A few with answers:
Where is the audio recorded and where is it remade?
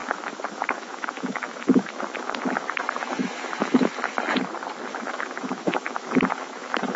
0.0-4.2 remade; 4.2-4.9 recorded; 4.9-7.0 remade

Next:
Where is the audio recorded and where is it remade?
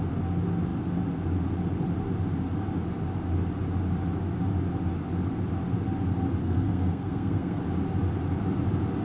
0.0-6.4 recorded; 6.4-7.6 remade; 7.6-9.0 recorded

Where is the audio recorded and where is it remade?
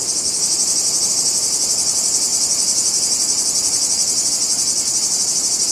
0.0-5.7 recorded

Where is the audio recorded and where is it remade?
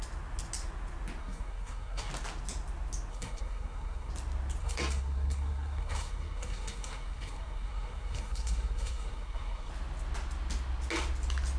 0.0-1.2 recorded; 1.2-2.1 remade; 2.1-3.1 recorded; 3.1-4.1 remade; 4.1-4.6 recorded; 4.6-9.7 remade; 9.7-11.6 recorded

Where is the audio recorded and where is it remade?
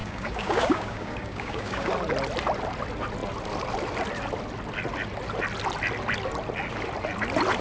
0.0-1.9 remade; 1.9-7.6 recorded